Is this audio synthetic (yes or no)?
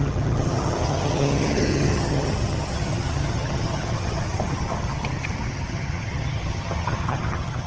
yes